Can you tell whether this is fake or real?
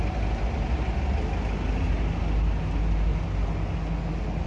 real